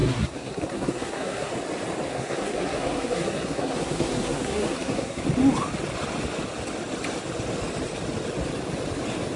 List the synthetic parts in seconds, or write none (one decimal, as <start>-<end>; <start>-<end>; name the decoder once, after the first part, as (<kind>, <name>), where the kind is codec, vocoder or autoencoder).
0.0-1.5 (codec, SNAC); 2.1-5.2